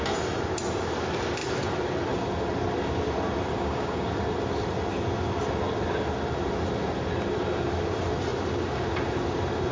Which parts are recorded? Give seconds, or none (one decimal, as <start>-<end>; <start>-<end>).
0.0-3.5; 4.1-9.7